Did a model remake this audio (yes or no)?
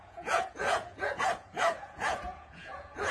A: yes